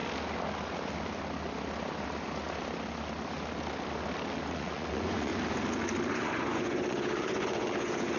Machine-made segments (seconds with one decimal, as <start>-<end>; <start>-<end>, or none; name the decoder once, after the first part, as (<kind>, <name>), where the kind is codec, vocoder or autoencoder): 4.5-5.3 (vocoder, Vocos); 6.1-8.2